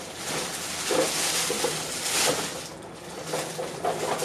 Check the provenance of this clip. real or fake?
real